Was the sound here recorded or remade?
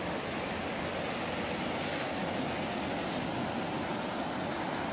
recorded